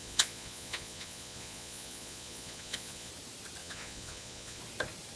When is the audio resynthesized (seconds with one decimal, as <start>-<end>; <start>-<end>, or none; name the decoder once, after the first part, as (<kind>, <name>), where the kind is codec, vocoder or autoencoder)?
0.0-3.1 (vocoder, Vocos); 3.6-4.6

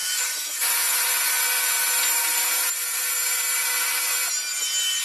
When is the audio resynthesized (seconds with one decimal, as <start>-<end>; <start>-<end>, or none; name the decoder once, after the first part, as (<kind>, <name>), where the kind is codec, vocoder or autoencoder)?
0.0-1.1 (vocoder, Vocos); 2.2-3.0

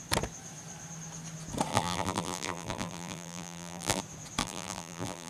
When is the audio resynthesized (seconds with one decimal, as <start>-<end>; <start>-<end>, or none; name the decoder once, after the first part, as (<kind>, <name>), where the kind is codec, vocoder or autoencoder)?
1.7-4.0 (vocoder, BigVGAN v2); 4.4-5.3

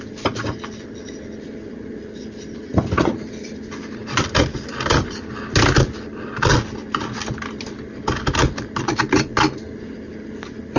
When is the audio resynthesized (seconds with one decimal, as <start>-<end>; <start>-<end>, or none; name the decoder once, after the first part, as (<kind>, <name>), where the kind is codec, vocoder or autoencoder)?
none